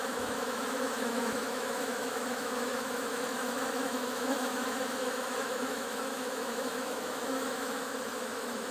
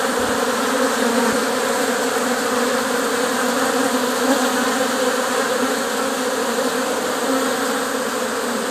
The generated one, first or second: first